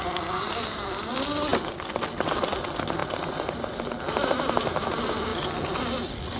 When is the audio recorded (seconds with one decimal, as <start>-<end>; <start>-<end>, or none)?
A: 0.0-3.0; 3.8-6.4